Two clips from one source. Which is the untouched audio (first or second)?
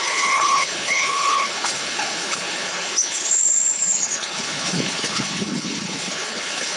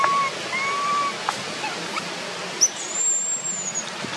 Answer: second